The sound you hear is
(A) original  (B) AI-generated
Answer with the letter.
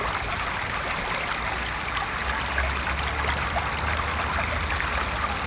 A